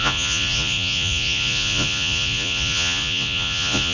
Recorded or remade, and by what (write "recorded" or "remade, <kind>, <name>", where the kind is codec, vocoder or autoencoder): remade, vocoder, Vocos